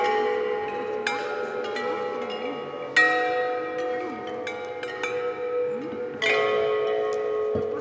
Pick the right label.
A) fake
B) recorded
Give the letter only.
B